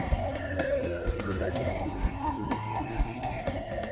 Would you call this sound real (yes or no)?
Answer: no